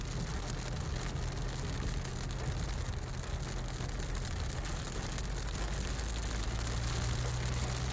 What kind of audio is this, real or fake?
real